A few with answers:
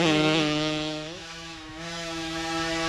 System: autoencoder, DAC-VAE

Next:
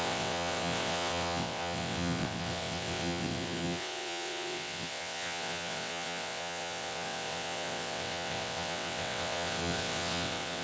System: vocoder, WaveNeXt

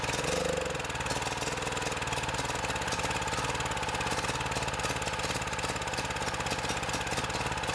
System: none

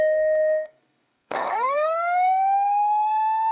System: codec, SNAC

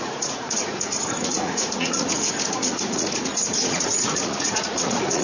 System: vocoder, Vocos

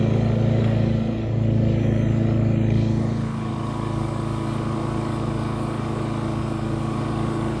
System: codec, DAC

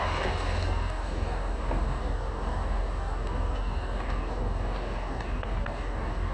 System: codec, DAC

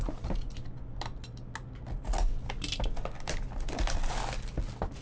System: none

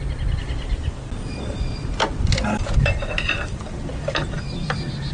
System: none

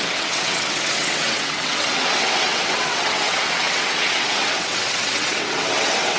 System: vocoder, WaveNeXt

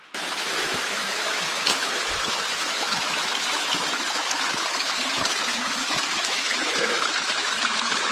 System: autoencoder, DAC-VAE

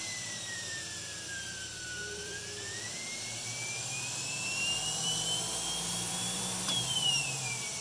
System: vocoder, BigVGAN v2